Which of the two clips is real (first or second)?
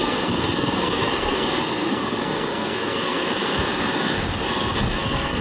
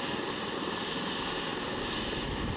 second